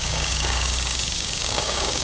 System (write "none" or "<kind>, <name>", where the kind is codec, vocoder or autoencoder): codec, DAC